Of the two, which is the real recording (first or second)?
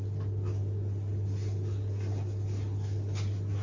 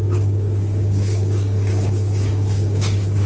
first